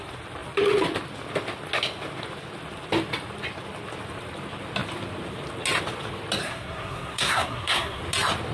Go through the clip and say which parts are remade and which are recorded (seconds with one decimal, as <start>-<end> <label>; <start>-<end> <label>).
0.0-6.4 recorded; 6.4-8.0 remade; 8.0-8.5 recorded